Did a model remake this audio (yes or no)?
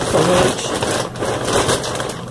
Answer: no